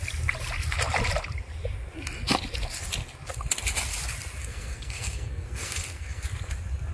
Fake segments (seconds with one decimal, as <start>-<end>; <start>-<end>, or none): 4.4-6.2